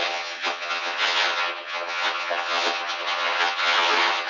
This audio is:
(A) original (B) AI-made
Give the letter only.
B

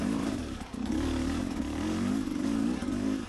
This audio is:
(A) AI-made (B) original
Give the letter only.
A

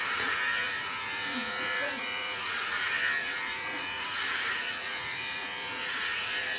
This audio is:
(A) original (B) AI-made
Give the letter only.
B